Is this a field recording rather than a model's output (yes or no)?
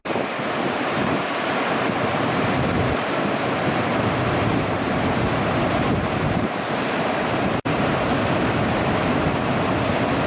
no